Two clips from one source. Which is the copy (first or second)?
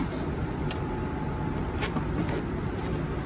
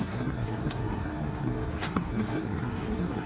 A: second